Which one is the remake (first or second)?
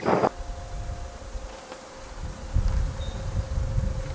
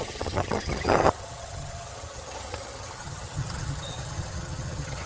second